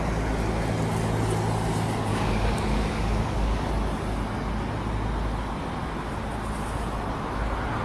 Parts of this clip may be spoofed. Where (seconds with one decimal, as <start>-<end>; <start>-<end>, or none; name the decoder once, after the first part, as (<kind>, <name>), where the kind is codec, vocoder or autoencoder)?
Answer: 2.1-3.7 (codec, DAC)